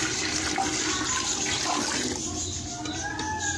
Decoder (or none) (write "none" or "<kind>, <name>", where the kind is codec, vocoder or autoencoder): none